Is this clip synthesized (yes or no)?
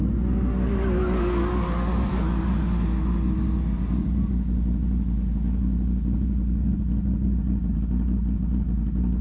no